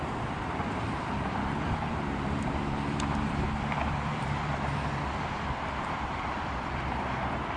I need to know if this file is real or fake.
fake